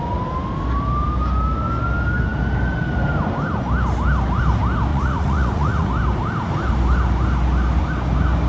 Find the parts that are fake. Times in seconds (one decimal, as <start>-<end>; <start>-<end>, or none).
4.9-5.9